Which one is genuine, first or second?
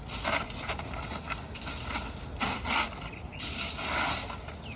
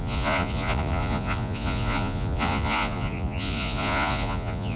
first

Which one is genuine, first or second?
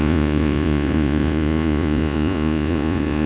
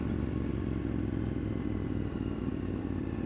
second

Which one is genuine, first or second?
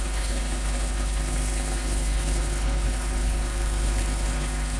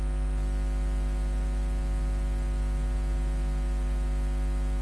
second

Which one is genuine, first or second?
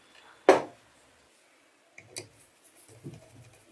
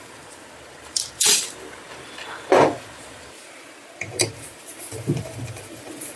first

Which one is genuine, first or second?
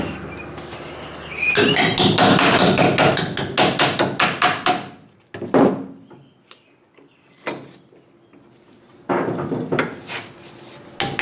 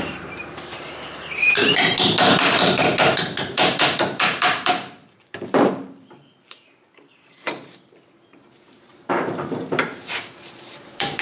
first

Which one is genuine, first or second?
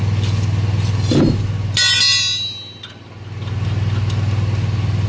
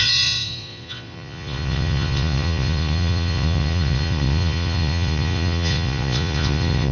first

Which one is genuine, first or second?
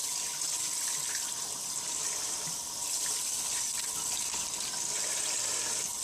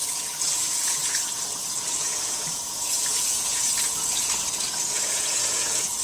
first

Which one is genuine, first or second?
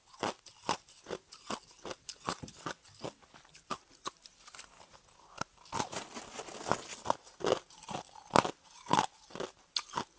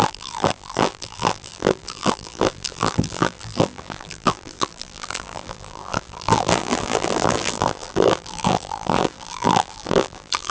first